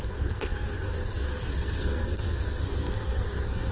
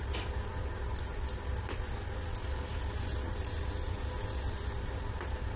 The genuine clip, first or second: second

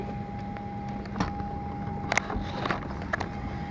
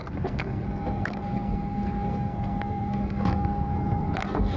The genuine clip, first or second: first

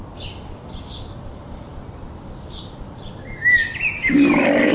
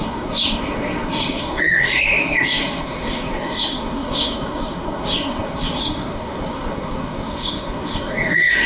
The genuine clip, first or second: first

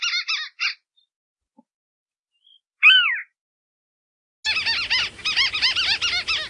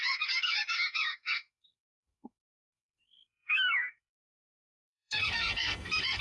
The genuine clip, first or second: first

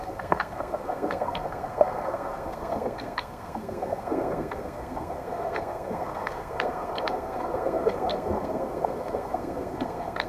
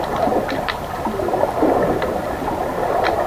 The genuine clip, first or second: second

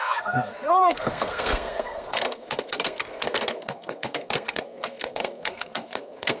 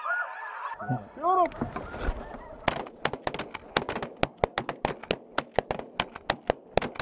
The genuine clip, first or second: second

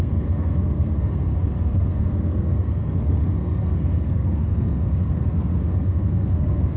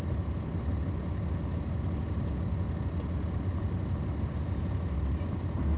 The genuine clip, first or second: second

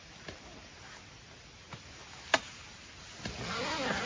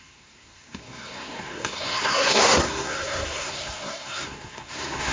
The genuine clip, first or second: first